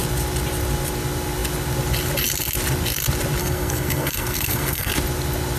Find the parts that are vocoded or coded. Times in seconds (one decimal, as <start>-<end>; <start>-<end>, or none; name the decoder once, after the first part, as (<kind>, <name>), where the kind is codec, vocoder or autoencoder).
3.4-4.9 (codec, SNAC)